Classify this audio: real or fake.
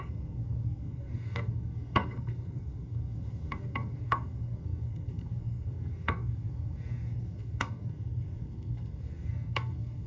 fake